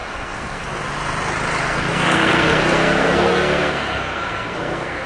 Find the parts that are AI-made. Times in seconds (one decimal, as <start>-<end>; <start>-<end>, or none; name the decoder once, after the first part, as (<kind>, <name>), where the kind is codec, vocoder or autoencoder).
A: 0.0-0.6 (codec, SNAC); 1.6-5.1